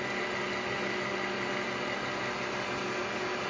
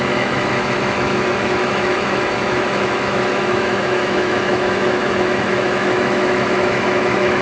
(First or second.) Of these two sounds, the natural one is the first